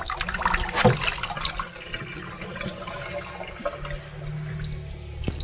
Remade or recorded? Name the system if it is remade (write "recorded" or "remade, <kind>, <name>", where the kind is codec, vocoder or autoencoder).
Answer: recorded